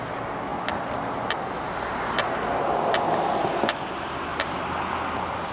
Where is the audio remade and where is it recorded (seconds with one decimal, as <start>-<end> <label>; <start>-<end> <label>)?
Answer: 0.0-4.3 recorded; 4.3-4.8 remade; 4.8-5.5 recorded